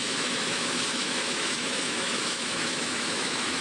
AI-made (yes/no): yes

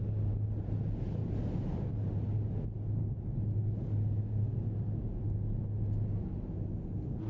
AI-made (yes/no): no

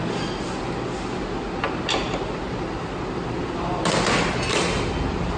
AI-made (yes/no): no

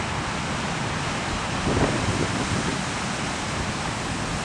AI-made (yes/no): no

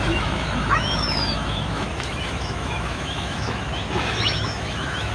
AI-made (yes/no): yes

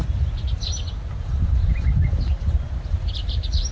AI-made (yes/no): no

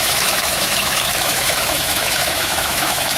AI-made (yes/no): yes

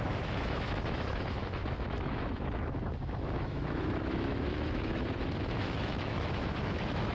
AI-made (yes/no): yes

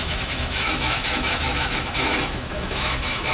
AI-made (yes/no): yes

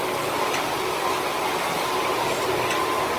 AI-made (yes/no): no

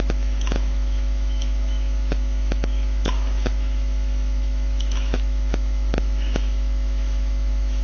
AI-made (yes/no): yes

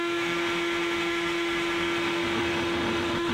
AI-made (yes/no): yes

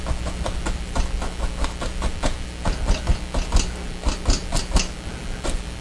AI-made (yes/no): no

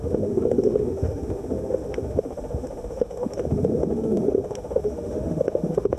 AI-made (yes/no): yes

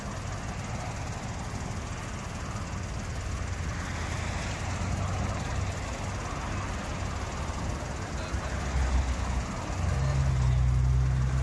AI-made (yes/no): no